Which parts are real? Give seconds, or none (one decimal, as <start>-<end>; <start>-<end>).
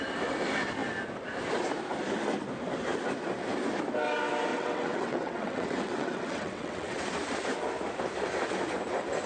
0.0-4.5; 7.0-9.3